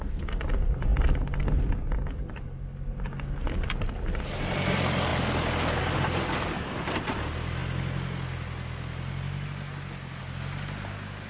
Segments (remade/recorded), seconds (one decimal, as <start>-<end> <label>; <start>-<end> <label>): 0.0-11.3 recorded